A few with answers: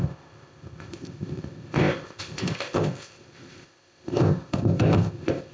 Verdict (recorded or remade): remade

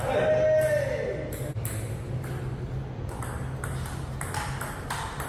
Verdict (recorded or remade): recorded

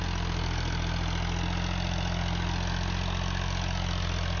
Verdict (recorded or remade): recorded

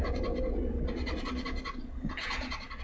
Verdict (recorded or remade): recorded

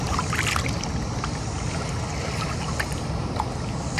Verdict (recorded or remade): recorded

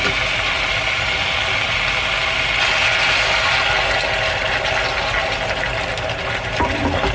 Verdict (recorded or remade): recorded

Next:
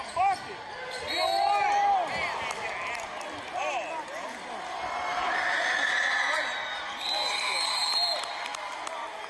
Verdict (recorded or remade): recorded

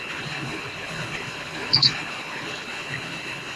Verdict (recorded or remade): remade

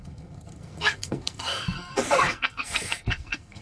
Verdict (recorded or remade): remade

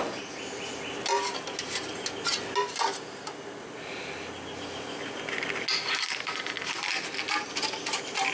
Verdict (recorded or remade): recorded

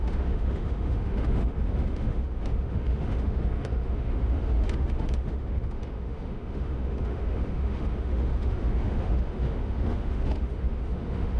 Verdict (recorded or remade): remade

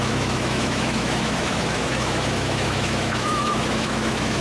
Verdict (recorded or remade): remade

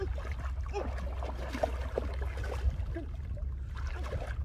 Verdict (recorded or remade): recorded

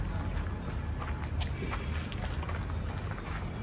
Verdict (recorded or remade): recorded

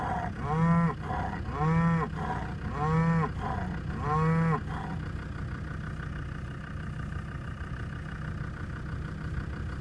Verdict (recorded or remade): recorded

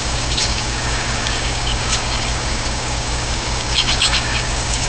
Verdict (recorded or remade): remade